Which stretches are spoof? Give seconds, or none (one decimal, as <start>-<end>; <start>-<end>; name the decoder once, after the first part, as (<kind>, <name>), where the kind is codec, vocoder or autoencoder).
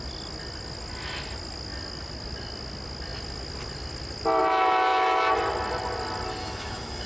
6.4-7.1 (autoencoder, DAC-VAE)